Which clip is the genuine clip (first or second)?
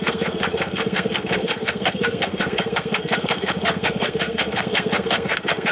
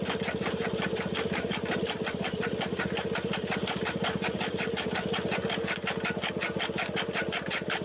second